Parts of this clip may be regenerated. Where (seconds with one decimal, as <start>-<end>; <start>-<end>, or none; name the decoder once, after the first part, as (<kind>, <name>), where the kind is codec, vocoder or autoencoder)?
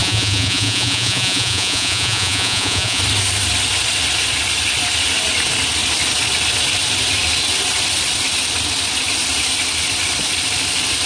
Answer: 0.0-3.0 (vocoder, Vocos)